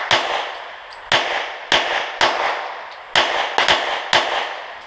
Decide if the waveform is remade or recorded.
recorded